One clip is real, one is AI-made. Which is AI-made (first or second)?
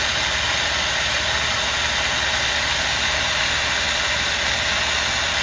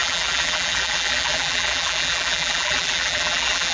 second